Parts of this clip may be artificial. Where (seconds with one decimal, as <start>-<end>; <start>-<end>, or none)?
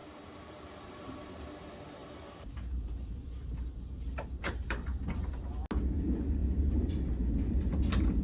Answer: 0.0-1.3; 2.0-5.5